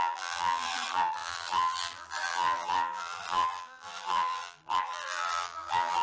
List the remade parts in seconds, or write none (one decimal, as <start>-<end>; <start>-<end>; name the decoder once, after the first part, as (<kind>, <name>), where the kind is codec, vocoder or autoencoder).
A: 0.0-6.0 (vocoder, BigVGAN v2)